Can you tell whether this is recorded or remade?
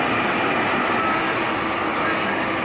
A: recorded